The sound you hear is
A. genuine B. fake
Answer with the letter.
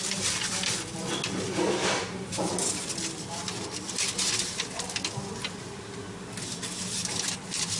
A